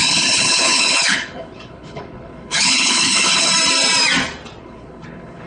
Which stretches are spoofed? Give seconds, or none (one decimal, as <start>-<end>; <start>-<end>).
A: 0.0-3.5; 4.6-5.5